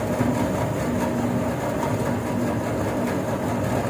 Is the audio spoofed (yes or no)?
no